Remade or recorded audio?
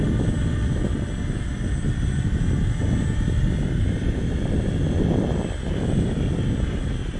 recorded